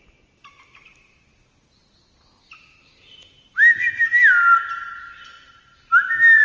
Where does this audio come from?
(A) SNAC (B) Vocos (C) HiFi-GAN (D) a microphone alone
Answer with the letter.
D